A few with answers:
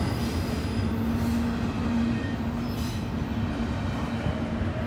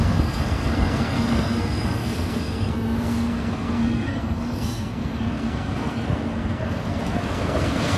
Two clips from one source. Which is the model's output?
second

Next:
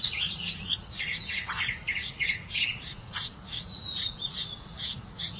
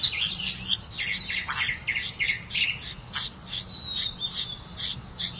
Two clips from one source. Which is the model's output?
first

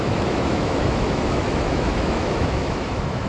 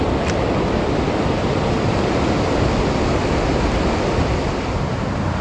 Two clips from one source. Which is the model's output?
first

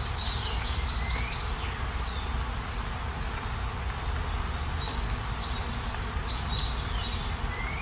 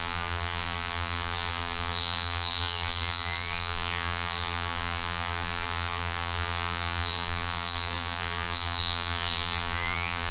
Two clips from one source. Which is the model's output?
second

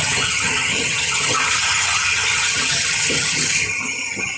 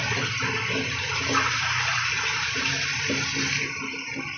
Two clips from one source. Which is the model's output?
first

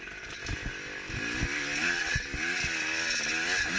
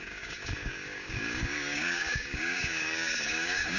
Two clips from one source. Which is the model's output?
second